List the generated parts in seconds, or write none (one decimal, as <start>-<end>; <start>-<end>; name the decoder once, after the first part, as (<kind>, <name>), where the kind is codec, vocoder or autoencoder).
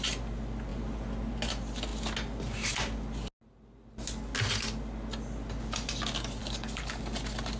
6.4-7.0 (codec, DAC)